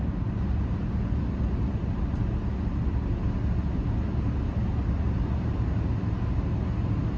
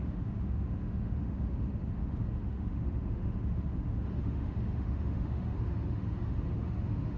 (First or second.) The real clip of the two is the first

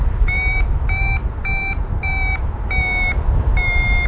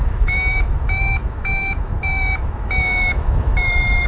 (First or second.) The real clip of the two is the first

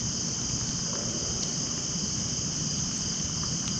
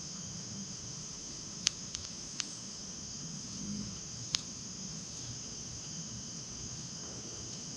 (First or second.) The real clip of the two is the first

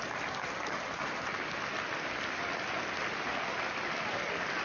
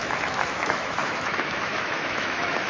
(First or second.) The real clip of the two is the first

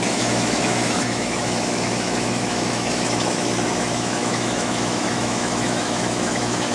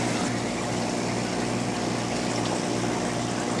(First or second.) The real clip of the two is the second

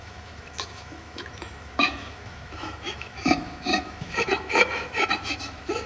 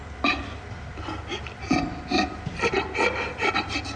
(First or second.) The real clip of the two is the second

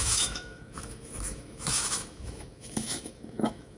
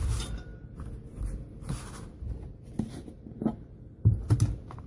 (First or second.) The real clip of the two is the second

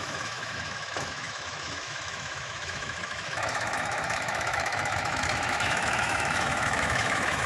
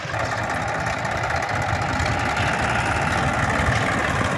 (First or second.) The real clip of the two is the second